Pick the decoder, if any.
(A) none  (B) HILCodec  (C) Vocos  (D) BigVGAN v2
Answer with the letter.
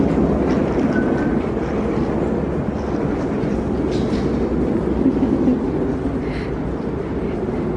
A